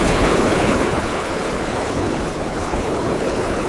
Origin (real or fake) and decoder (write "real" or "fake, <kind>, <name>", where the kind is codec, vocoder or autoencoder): fake, codec, HILCodec